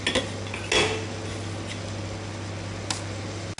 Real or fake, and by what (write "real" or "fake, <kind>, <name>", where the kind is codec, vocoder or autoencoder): real